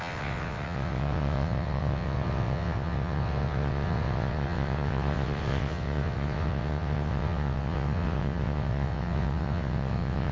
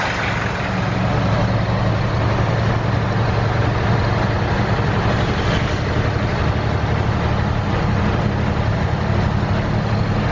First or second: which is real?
second